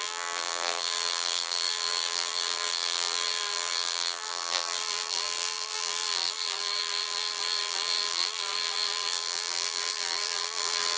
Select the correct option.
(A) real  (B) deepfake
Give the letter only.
B